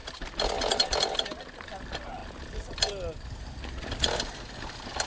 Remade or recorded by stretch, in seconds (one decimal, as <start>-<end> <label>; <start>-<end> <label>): 0.0-5.1 recorded